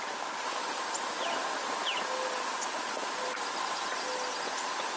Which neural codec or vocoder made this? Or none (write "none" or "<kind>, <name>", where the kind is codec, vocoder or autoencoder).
none